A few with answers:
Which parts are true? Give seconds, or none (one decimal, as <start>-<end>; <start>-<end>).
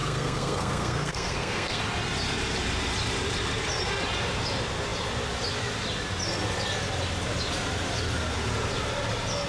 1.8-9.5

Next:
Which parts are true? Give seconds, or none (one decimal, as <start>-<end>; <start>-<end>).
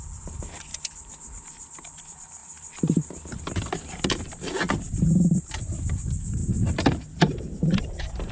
0.7-2.0; 2.4-3.4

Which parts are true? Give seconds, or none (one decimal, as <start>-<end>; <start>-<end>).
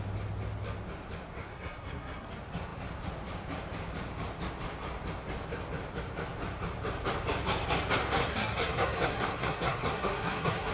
0.0-1.5; 2.3-8.2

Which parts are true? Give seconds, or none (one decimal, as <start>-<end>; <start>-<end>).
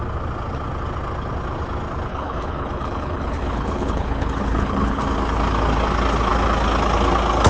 0.0-2.1; 5.0-7.5